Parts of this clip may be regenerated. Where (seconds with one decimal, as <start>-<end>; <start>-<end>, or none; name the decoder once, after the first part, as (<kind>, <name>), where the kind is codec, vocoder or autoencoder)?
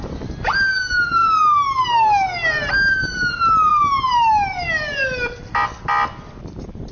none